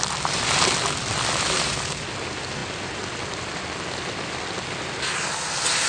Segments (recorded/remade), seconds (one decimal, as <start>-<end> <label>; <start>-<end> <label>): 0.0-5.9 recorded